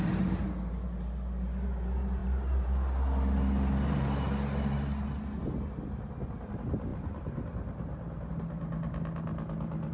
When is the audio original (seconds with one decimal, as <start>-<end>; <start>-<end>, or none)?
0.0-9.9